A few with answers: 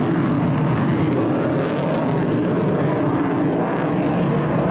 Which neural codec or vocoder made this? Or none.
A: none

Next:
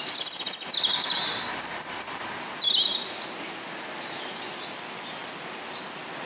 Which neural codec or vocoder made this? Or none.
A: none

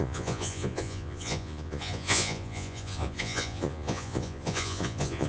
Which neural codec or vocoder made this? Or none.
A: vocoder, Vocos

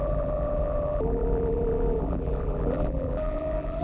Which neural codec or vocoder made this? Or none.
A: vocoder, BigVGAN v2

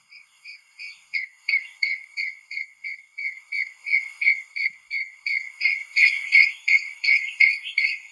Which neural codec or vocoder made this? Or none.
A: codec, SNAC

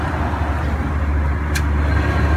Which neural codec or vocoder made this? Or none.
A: none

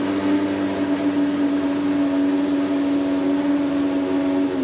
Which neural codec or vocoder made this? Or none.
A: none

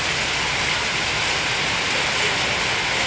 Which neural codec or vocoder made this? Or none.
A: none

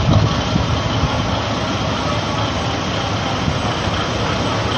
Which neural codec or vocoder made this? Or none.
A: none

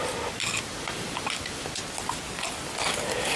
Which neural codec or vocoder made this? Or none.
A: none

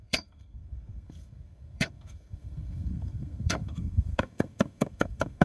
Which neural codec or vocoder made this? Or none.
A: codec, SNAC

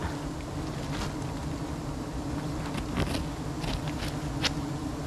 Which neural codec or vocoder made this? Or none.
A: none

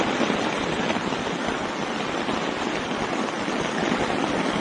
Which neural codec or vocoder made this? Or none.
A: none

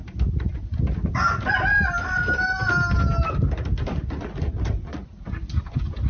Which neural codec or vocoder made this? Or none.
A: none